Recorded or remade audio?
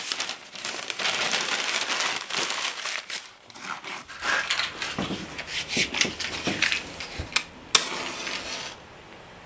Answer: recorded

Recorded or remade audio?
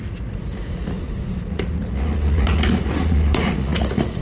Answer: remade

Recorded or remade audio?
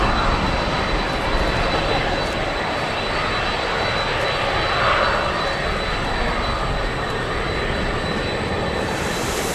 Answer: recorded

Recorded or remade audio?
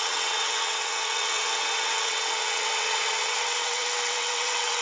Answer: remade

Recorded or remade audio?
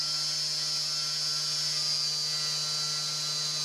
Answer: recorded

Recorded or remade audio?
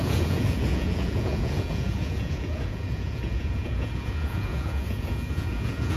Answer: remade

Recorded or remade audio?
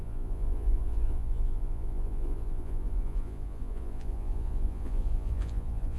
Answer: remade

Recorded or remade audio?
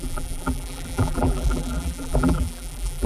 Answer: remade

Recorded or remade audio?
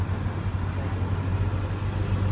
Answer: recorded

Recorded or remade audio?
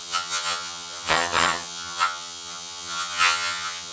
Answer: remade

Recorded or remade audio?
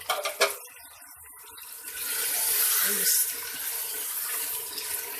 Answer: recorded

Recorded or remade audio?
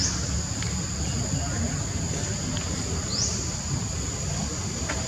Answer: recorded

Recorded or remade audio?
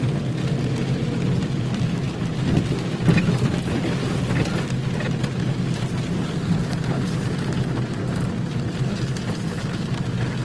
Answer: recorded